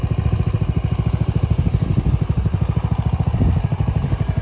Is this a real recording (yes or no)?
yes